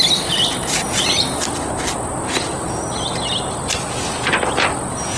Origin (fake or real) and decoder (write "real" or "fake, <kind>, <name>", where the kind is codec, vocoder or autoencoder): real